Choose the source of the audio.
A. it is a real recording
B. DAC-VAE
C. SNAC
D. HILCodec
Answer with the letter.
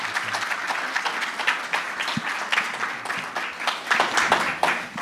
A